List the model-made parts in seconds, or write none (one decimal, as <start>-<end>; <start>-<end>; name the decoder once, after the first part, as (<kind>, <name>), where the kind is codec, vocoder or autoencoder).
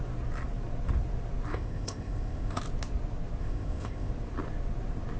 1.5-2.6 (codec, ZipCodec); 3.4-4.1